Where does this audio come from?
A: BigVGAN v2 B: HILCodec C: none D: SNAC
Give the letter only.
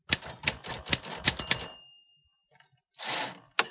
C